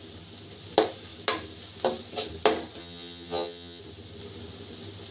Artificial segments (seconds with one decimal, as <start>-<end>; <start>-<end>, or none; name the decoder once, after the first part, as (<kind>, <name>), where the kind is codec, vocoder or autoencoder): 2.8-3.8 (vocoder, HiFi-GAN)